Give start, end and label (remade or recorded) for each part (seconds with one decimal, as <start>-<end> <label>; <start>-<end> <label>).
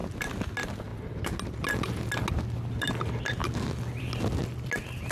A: 0.0-5.1 recorded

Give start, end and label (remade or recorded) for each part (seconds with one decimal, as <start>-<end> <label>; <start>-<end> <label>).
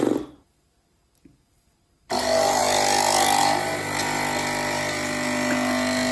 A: 0.0-6.1 recorded